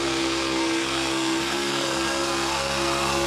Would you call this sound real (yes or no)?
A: no